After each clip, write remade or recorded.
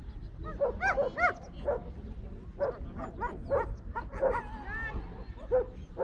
recorded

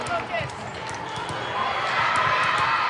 remade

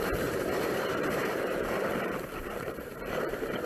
remade